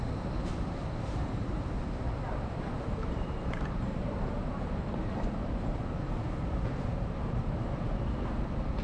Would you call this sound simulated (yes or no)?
yes